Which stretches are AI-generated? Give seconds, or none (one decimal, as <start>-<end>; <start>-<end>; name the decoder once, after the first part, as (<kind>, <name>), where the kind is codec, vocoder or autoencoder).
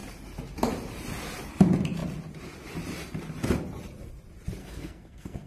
4.6-5.5 (codec, SNAC)